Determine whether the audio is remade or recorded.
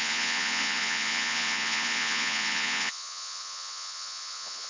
remade